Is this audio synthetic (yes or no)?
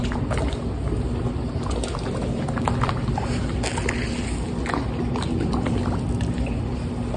no